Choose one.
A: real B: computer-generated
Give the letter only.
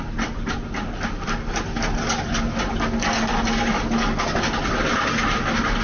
A